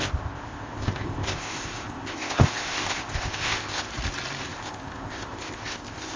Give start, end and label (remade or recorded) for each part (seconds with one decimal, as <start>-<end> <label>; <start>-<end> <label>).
0.0-3.9 remade; 3.9-4.5 recorded; 4.5-6.2 remade

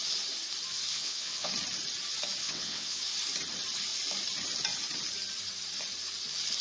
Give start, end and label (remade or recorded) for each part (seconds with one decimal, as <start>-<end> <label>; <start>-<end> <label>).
0.0-0.9 recorded; 0.9-1.5 remade; 1.5-2.4 recorded; 2.4-3.0 remade; 3.0-6.6 recorded